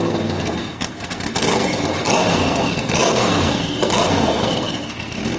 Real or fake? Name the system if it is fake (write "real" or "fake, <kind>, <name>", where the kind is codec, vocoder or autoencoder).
fake, codec, SNAC